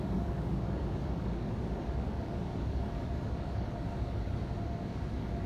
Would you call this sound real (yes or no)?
no